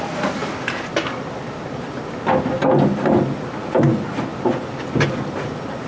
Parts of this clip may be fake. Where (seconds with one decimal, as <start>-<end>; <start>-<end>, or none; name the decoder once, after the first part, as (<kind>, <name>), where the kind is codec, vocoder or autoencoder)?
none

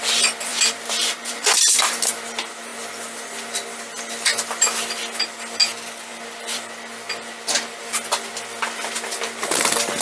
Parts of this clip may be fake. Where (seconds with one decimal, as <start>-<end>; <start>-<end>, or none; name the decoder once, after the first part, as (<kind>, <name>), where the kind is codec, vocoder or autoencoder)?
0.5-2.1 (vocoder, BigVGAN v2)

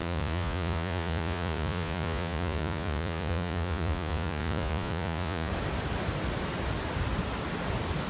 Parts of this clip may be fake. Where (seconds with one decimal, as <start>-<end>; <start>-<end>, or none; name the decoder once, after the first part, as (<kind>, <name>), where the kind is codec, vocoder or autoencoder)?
0.0-5.5 (vocoder, Vocos)

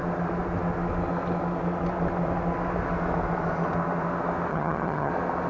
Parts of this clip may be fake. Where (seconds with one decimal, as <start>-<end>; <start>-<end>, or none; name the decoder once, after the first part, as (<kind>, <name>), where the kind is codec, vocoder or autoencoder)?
4.5-5.1 (vocoder, HiFi-GAN)

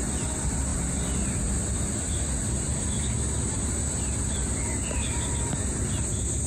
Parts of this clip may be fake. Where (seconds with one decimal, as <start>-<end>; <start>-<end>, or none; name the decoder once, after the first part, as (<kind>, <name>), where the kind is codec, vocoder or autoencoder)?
none

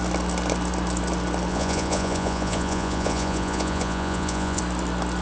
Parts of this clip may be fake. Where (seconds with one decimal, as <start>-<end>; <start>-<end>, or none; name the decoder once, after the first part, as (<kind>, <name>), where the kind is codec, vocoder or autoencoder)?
1.5-4.6 (vocoder, Vocos)